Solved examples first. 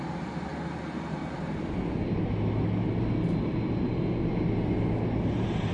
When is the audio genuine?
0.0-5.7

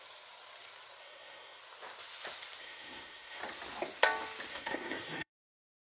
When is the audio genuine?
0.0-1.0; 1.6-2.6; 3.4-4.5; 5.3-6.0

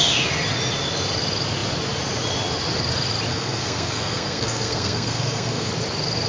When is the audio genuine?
0.0-3.3; 5.7-6.3